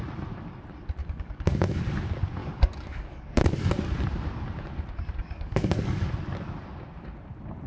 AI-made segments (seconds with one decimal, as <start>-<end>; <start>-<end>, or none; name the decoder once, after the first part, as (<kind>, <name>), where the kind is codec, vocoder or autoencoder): 1.0-1.8 (codec, DAC); 2.4-3.7; 5.2-6.1